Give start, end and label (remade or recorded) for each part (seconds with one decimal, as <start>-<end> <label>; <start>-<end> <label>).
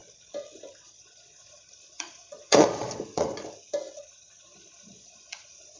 0.0-0.8 recorded; 0.8-3.3 remade; 3.3-4.0 recorded; 4.0-5.8 remade